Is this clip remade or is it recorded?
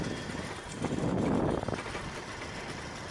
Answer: recorded